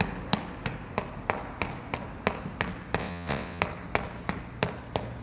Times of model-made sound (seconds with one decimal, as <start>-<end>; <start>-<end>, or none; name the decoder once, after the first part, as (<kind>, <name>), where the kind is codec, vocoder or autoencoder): 3.0-3.6 (vocoder, WaveNeXt)

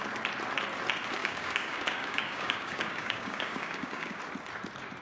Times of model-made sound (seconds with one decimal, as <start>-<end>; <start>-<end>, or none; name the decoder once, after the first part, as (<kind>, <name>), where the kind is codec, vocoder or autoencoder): 1.2-4.2 (codec, DAC)

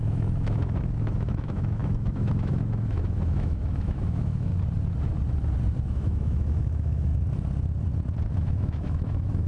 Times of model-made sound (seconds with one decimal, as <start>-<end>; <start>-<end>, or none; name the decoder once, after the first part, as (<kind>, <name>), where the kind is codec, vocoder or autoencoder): 0.0-4.5 (autoencoder, DAC-VAE); 5.9-7.1; 8.3-9.5

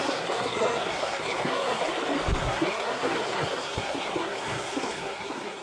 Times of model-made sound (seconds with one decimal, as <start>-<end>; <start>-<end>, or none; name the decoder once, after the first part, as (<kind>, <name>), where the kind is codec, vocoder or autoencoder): 0.0-1.8 (codec, SNAC); 2.4-5.6

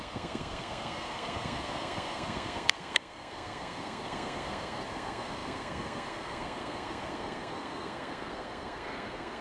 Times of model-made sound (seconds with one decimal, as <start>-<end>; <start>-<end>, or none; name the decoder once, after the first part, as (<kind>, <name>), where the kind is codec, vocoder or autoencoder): 0.0-9.4 (codec, SNAC)

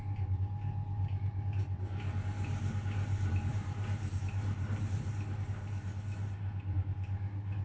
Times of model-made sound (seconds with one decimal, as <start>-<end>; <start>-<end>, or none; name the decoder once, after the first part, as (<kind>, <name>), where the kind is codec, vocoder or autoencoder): 3.5-5.5 (vocoder, BigVGAN v2)